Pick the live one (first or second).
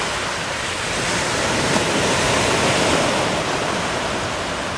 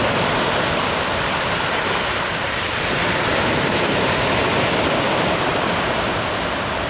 first